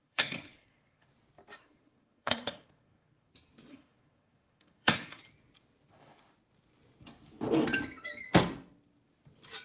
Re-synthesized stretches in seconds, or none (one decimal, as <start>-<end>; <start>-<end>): 0.0-1.1; 1.6-3.3; 3.7-5.2